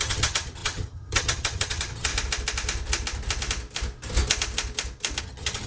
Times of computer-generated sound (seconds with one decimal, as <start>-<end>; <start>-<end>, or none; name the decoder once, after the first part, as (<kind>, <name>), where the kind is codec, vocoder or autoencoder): 0.0-2.1 (vocoder, HiFi-GAN); 5.2-5.7